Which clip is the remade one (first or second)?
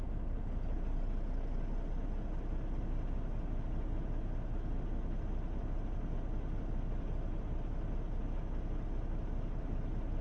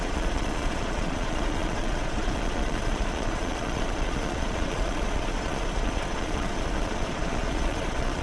second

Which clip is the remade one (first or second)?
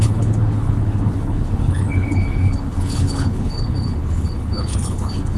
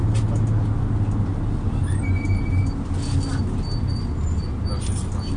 first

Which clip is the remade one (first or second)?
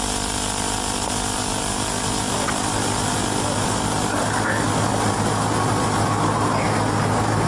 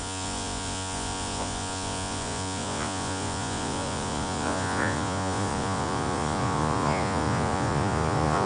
second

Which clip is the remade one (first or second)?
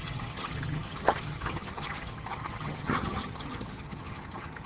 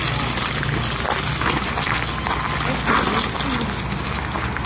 first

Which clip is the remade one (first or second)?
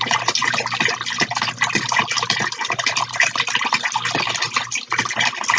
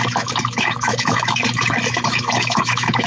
second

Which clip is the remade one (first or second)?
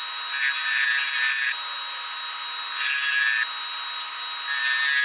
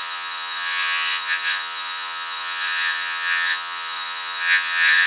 second